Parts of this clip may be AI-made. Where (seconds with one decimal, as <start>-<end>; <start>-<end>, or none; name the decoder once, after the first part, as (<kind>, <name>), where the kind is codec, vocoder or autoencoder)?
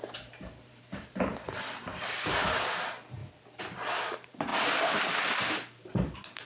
0.0-3.2 (vocoder, BigVGAN v2); 3.9-4.5; 5.4-6.5